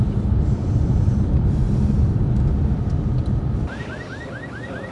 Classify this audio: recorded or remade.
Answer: remade